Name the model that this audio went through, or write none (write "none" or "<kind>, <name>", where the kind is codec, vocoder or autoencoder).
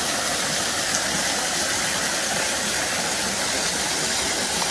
none